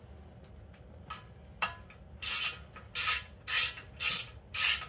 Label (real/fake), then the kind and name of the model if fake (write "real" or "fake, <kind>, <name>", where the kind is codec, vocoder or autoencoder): real